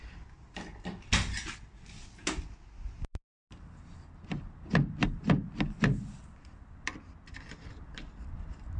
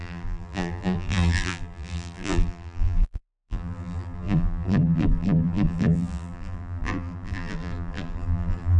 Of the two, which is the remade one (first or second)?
second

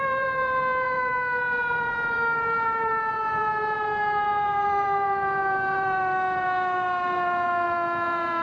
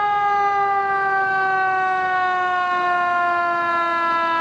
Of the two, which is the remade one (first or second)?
first